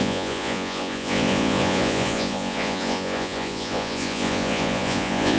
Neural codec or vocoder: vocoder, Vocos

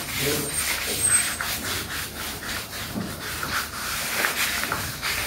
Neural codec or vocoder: vocoder, BigVGAN v2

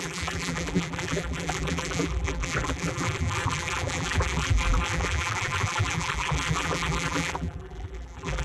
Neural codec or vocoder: vocoder, BigVGAN v2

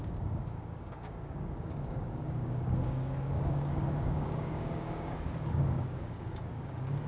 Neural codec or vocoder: codec, DAC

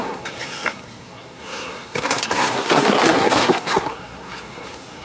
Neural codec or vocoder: codec, SNAC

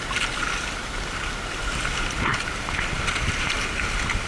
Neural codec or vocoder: none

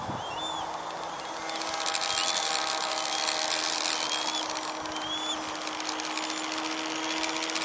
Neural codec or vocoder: none